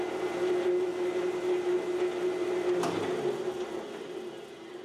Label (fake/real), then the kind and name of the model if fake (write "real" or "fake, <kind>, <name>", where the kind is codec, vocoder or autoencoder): real